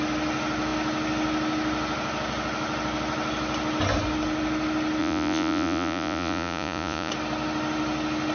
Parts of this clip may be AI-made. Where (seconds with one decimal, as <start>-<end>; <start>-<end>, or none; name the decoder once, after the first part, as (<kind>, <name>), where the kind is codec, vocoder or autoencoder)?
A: 5.0-7.1 (vocoder, Vocos)